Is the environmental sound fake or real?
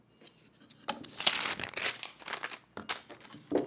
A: real